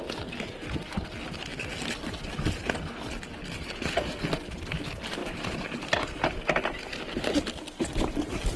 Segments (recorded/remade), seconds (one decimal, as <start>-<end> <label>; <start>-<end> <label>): 0.0-5.2 recorded; 5.2-6.6 remade; 6.6-8.6 recorded